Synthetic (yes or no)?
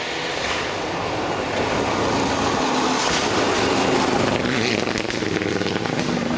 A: no